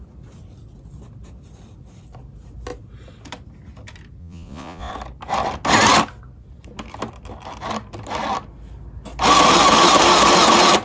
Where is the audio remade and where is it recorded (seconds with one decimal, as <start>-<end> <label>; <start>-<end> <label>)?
0.0-4.2 recorded; 4.2-4.9 remade; 4.9-10.8 recorded